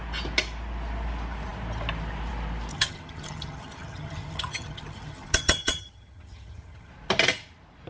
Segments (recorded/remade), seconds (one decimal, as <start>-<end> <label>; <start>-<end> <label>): 0.0-2.7 recorded; 2.7-6.9 remade; 6.9-7.9 recorded